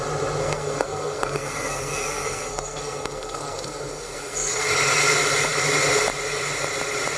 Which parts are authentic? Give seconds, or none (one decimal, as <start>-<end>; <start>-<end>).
0.0-0.4; 4.7-7.2